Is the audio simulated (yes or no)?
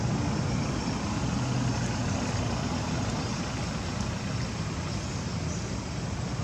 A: no